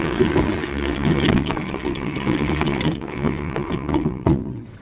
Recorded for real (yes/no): no